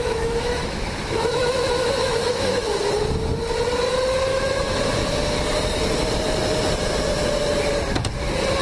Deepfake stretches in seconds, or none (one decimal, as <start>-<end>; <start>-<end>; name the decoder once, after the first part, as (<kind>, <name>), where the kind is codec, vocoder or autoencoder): 0.0-2.7 (autoencoder, DAC-VAE); 4.3-5.0